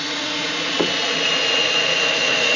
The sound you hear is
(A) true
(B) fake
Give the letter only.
B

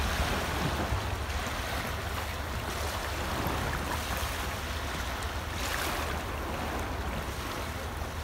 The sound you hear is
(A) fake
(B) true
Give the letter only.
B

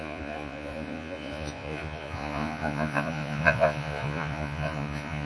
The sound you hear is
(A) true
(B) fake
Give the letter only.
B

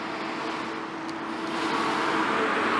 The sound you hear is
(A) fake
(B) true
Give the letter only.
B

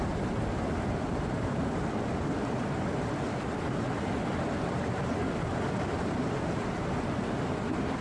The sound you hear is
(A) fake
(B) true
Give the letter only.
B